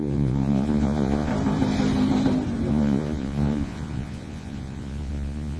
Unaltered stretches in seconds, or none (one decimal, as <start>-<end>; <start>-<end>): 1.3-2.7